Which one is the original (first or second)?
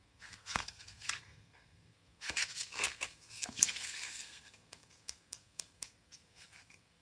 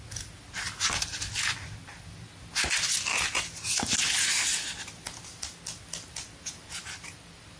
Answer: second